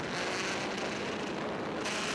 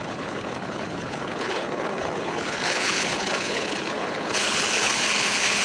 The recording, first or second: first